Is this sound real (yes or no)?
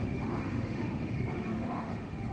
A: no